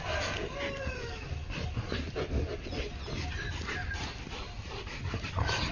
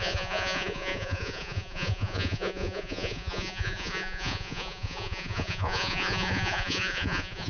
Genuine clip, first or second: first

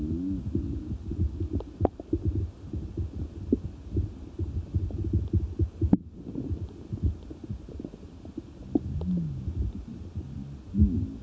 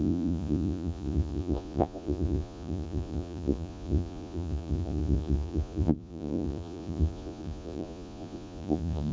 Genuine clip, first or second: first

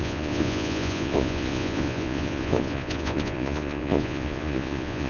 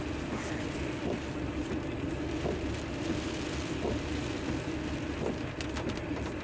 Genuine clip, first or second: second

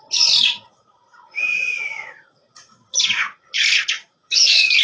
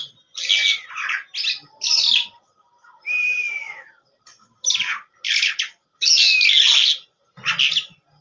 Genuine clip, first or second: second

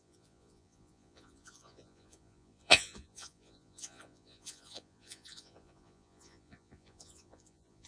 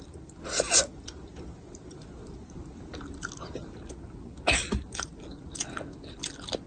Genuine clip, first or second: second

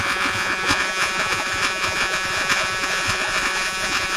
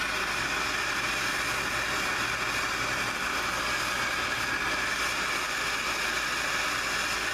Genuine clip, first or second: second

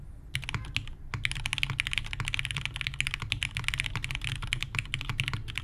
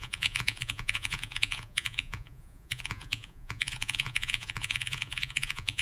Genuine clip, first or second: first